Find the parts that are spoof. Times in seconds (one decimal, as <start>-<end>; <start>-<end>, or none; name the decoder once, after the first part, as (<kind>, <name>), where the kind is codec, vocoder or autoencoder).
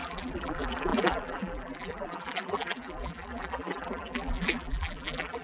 0.0-5.4 (vocoder, BigVGAN v2)